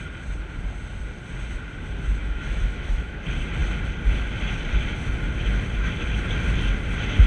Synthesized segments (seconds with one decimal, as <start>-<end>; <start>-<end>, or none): 2.2-3.2